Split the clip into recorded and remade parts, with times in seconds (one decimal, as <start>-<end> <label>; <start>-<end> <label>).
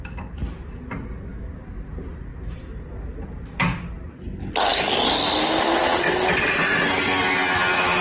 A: 0.0-8.0 recorded